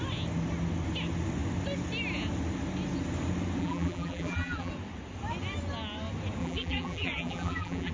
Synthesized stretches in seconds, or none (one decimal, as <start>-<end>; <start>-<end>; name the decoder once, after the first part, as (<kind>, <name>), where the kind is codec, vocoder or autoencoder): 3.6-4.7 (vocoder, BigVGAN v2); 6.4-7.9